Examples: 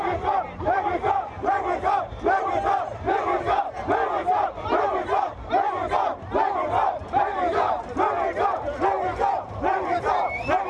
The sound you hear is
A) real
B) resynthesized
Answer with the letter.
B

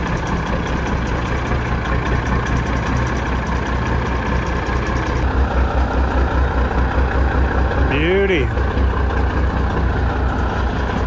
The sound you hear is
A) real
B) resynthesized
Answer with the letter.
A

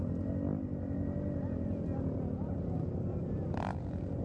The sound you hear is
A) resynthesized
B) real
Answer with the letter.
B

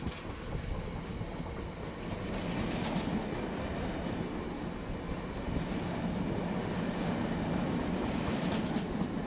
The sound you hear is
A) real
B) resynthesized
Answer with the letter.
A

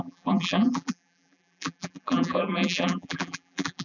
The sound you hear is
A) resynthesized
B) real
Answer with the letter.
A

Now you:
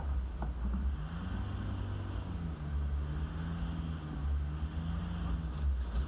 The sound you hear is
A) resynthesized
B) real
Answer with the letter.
B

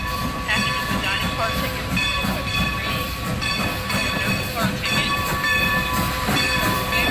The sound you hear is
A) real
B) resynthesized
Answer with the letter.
B